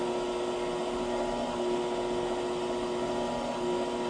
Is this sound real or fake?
real